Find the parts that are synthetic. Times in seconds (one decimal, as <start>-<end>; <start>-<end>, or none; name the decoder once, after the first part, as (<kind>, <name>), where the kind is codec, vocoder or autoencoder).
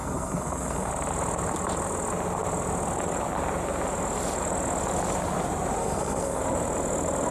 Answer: 0.0-0.9 (codec, SNAC); 5.8-6.4